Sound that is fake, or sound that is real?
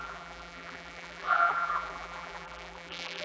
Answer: fake